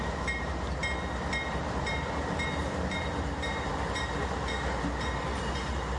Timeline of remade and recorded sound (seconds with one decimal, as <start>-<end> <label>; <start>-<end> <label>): 0.0-0.8 remade; 0.8-1.5 recorded; 1.5-6.0 remade